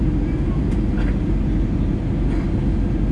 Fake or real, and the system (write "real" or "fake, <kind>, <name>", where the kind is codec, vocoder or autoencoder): real